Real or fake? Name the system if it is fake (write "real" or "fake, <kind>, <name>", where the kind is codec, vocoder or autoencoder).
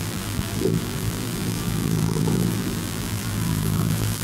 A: fake, vocoder, BigVGAN v2